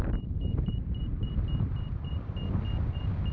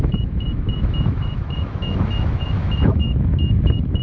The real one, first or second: first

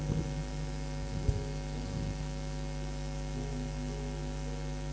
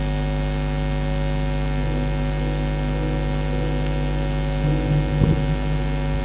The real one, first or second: second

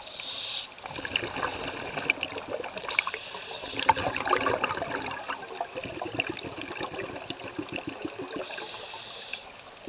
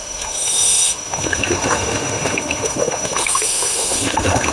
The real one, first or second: first